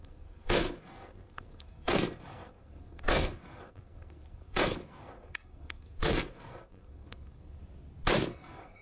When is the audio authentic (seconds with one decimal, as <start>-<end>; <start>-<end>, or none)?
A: 7.6-8.3